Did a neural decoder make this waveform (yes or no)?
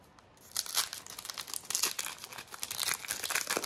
no